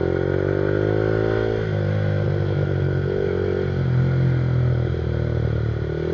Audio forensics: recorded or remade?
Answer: recorded